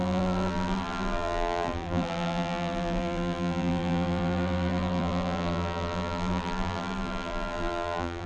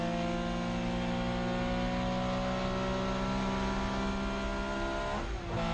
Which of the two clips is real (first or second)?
second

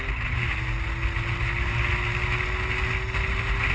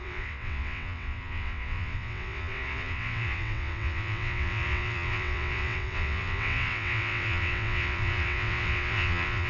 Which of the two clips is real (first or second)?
first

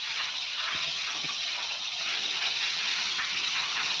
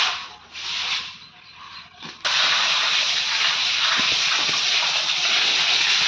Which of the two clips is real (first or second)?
second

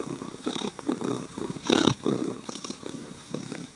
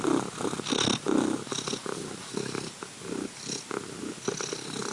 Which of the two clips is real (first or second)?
second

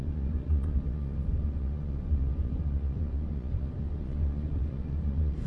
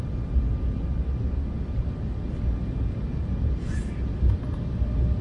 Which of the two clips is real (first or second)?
second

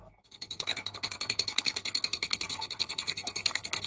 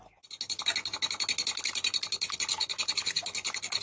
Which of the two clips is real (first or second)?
second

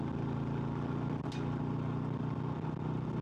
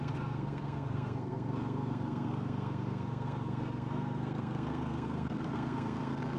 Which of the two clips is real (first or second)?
first